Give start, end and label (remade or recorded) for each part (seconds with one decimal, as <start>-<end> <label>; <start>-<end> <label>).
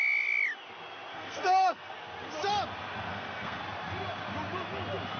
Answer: 0.0-1.1 recorded; 1.1-1.9 remade; 1.9-3.1 recorded; 3.1-3.6 remade; 3.6-5.2 recorded